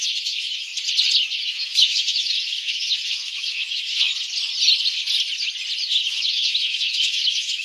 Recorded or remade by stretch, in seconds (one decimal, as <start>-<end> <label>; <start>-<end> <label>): 0.0-0.7 remade; 0.7-1.4 recorded; 1.4-4.1 remade; 4.1-5.9 recorded; 5.9-7.6 remade

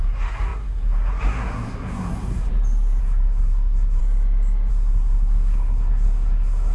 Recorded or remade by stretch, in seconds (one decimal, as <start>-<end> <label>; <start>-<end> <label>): 0.0-2.5 remade; 2.5-3.0 recorded; 3.0-4.0 remade; 4.0-4.7 recorded; 4.7-6.7 remade

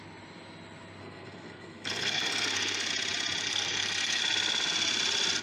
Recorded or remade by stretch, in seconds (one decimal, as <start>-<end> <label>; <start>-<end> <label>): 0.0-1.0 recorded; 1.0-2.9 remade; 2.9-3.4 recorded; 3.4-4.2 remade; 4.2-5.4 recorded

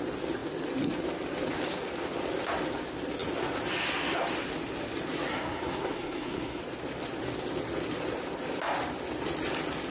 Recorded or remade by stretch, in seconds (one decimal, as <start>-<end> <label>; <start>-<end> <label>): 0.0-5.3 recorded; 5.3-6.6 remade; 6.6-9.9 recorded